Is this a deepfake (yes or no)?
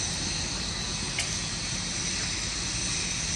no